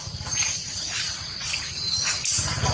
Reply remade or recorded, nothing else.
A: recorded